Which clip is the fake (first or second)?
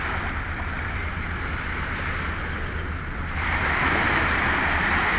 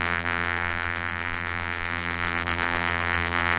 second